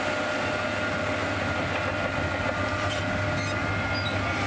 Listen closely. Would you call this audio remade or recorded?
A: recorded